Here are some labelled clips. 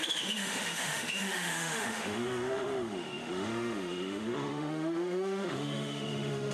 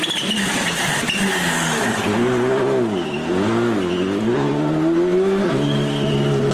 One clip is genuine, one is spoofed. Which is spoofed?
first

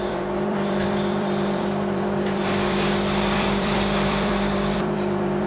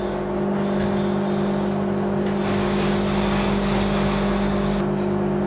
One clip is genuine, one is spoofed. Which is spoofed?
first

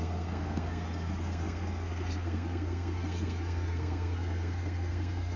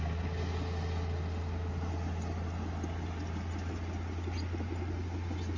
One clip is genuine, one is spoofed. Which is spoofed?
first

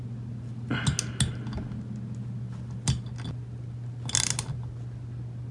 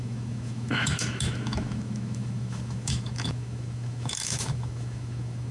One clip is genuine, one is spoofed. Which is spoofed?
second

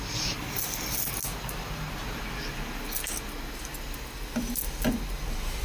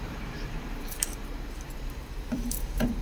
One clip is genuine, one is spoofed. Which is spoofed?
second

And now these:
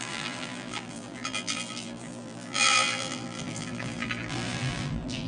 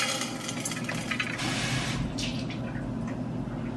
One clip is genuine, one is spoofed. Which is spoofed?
first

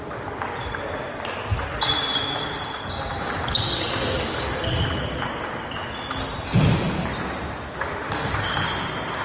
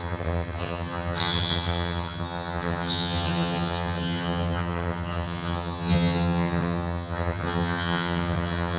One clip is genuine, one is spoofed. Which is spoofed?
second